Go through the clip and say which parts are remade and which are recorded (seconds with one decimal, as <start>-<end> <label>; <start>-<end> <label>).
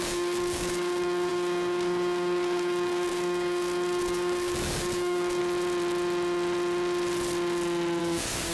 0.0-5.4 remade; 5.4-8.0 recorded; 8.0-8.5 remade